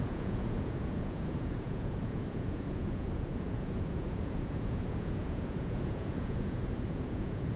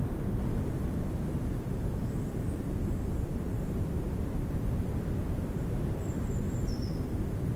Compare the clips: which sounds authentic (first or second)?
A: second